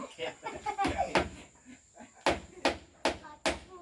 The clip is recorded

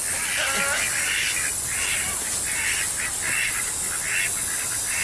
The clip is recorded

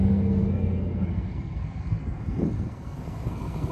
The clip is remade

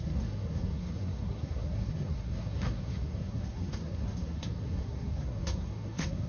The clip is remade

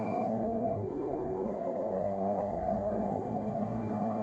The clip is remade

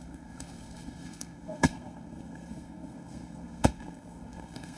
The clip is remade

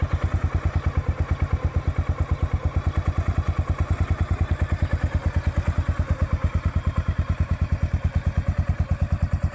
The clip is recorded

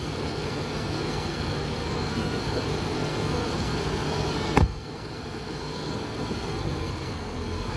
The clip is remade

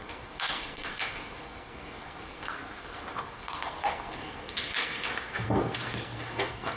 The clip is remade